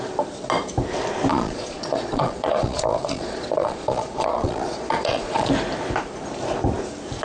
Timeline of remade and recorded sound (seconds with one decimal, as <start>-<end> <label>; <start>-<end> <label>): 0.0-1.3 recorded; 1.3-5.5 remade; 5.5-7.2 recorded